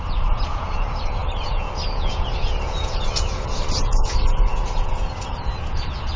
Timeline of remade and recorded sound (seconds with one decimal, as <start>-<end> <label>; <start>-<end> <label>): 0.0-6.2 remade